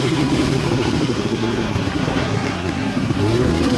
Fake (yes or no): yes